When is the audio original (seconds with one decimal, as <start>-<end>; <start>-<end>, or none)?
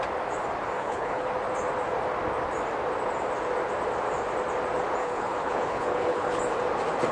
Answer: 0.0-0.8; 1.3-5.0; 6.4-7.1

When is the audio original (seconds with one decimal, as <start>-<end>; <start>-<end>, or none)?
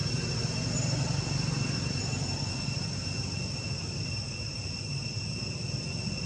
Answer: 0.0-6.3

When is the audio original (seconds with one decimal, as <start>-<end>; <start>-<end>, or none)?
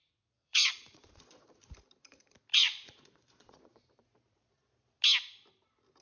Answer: 1.7-2.5; 4.9-6.0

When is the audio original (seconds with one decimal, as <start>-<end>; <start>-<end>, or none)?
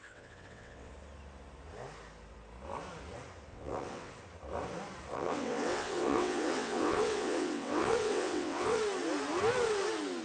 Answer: 0.9-3.5; 4.1-5.1; 8.8-10.2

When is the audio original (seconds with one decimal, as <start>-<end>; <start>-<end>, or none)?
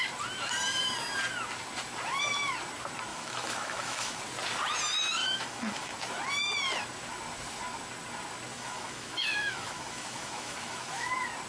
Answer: 0.0-3.1; 4.2-5.2; 5.9-8.5; 11.1-11.5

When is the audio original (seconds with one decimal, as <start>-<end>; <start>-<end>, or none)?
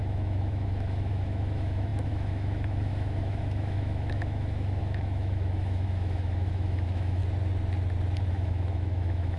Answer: 7.2-8.3